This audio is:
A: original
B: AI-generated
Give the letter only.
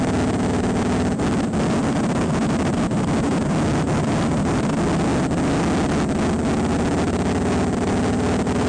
A